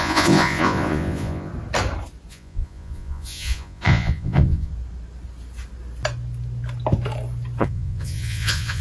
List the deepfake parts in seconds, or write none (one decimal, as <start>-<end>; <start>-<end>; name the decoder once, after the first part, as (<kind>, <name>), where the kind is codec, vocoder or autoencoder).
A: 0.0-1.5 (vocoder, Vocos); 2.3-4.7; 7.6-8.8

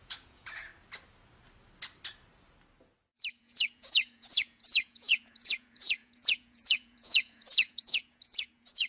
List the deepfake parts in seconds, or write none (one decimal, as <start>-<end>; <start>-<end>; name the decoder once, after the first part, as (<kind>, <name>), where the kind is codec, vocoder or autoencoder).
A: 0.0-0.7 (vocoder, Vocos); 3.4-8.9